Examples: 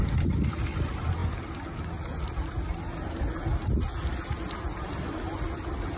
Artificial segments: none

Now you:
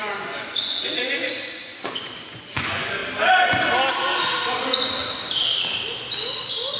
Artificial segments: 0.0-3.0

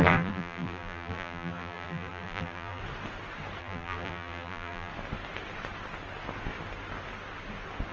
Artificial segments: 0.0-2.8; 3.6-4.9

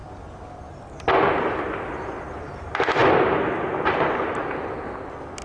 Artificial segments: none

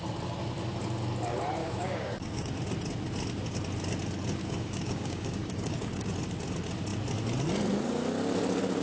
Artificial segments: 1.6-2.5; 4.4-6.1

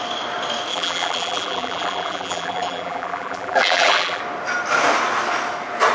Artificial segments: 0.7-4.2

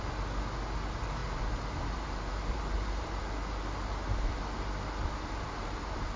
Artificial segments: 1.2-3.2